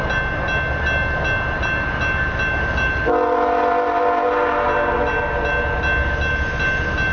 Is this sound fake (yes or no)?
no